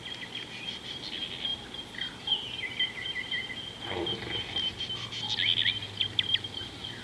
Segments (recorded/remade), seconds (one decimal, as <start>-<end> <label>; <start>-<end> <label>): 0.0-7.0 recorded